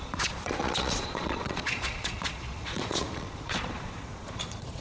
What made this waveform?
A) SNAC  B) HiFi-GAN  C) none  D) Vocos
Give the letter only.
D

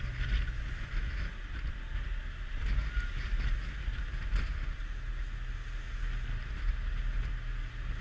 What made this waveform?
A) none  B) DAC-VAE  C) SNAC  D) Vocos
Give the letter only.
A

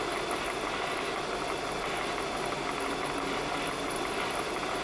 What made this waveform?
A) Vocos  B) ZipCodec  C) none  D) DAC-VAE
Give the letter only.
C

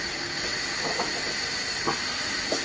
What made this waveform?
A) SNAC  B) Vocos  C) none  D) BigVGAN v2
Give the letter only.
C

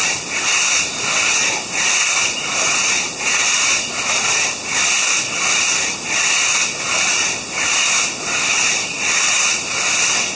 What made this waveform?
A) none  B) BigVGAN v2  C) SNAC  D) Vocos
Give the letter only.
A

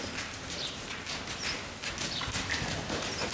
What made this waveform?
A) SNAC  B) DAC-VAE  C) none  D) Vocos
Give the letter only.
C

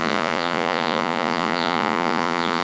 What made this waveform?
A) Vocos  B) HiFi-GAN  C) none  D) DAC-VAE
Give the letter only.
A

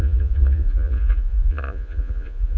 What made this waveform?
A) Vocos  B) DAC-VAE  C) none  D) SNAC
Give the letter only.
A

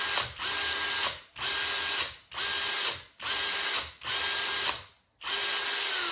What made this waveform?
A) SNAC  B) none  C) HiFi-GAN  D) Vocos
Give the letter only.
B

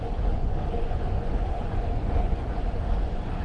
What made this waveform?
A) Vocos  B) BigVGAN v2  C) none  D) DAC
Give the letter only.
A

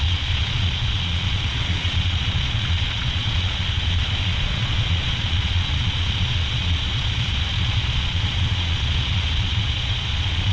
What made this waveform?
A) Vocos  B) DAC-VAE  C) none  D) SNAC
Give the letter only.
A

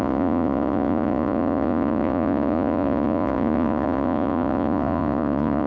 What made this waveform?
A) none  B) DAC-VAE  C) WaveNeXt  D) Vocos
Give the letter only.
D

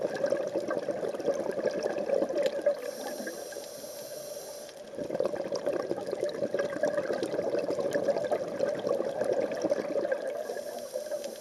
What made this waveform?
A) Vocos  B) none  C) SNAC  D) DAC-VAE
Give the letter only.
B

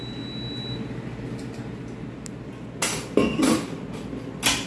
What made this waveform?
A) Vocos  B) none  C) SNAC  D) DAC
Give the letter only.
B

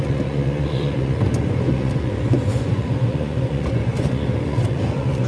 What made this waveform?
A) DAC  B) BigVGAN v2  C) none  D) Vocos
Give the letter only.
D